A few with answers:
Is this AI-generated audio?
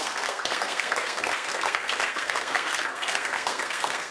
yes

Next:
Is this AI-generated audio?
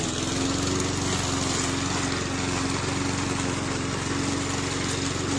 no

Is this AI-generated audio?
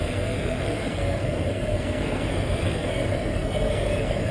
yes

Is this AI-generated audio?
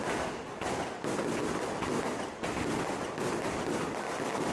no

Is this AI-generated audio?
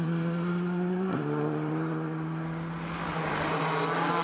no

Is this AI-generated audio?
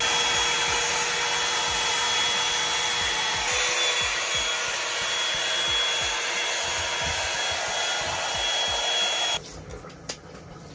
no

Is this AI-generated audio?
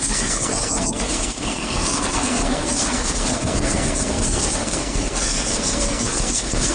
yes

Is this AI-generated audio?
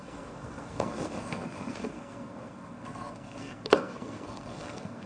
yes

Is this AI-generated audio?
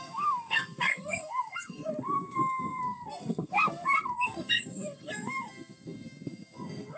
yes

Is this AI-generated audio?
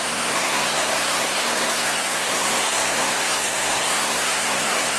yes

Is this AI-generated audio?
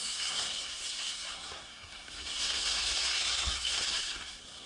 yes